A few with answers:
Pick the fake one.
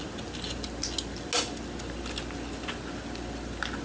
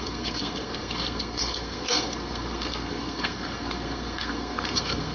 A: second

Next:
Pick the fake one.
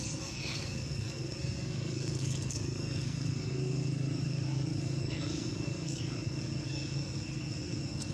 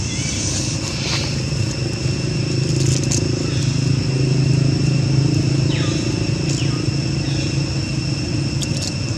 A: first